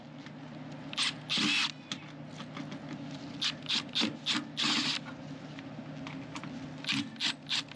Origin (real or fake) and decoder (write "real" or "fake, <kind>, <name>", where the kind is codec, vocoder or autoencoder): real